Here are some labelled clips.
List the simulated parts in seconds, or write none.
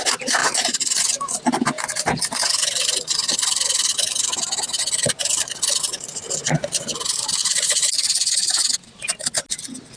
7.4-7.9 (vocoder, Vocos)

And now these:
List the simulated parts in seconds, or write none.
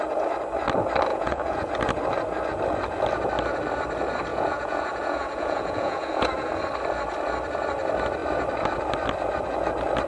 1.1-1.7 (vocoder, Vocos); 4.3-6.5